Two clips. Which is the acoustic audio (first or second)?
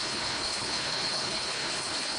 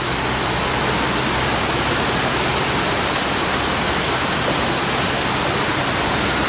second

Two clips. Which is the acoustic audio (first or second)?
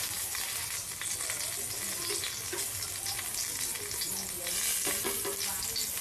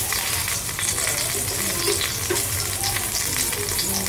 first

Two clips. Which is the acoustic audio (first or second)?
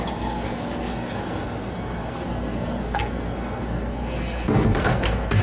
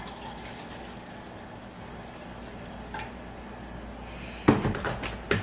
second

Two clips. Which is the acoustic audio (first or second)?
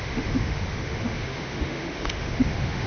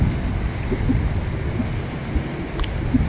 second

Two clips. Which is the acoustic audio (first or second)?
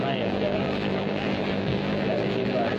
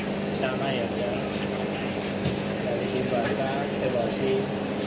second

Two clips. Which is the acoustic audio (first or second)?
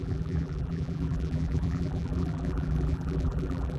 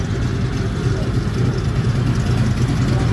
second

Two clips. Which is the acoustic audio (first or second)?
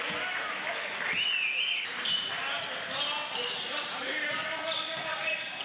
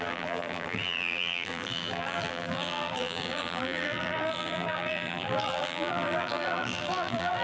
first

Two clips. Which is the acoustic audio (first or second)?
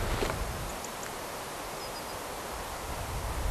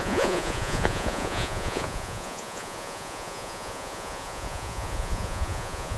first